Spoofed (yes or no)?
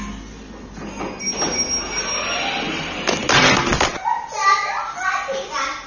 no